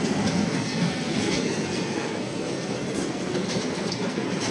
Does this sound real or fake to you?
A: fake